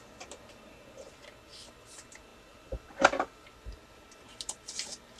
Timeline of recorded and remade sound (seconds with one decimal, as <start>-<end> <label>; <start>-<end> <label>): 0.0-5.2 recorded